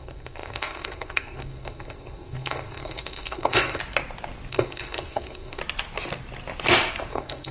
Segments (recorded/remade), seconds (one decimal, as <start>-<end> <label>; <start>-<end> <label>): 0.0-3.8 remade; 3.8-4.5 recorded; 4.5-5.6 remade; 5.6-7.1 recorded; 7.1-7.5 remade